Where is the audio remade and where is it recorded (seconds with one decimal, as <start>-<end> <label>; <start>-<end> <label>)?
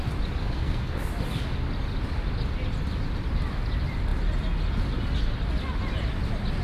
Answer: 0.0-0.4 recorded; 0.4-1.1 remade; 1.1-6.6 recorded